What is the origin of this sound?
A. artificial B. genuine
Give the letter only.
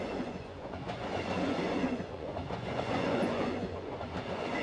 A